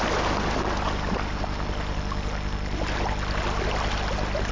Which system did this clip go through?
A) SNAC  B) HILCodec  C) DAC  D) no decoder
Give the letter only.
D